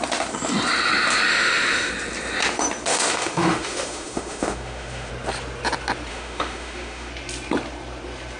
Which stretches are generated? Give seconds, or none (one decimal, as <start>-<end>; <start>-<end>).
1.3-1.9; 2.9-5.1; 6.1-7.1